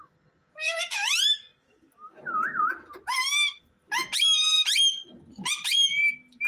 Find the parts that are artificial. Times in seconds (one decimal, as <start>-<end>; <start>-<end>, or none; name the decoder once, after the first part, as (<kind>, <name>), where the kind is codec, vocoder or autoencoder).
0.4-1.1 (vocoder, Vocos)